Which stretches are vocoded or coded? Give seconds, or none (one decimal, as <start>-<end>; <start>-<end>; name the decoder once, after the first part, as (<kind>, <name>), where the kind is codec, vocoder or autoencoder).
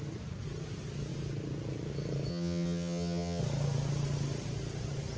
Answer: 2.3-3.4 (vocoder, HiFi-GAN)